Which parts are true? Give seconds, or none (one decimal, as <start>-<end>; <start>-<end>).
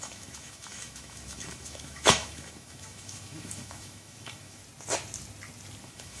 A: 4.6-5.8